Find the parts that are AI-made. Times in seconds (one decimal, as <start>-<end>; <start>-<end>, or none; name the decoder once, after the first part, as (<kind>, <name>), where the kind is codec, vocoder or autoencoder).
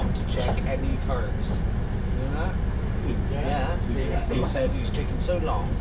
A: 4.0-4.8 (codec, SNAC)